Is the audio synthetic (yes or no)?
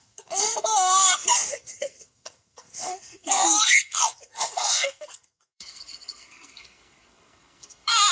yes